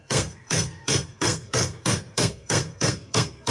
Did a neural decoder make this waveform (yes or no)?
yes